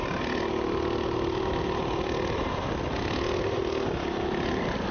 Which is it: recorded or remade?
recorded